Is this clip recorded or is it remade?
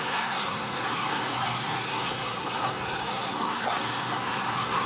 remade